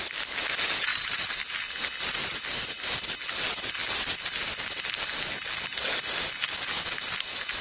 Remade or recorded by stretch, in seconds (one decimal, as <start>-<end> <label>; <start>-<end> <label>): 0.0-0.9 recorded; 0.9-1.5 remade; 1.5-2.2 recorded; 2.2-3.3 remade; 3.3-7.6 recorded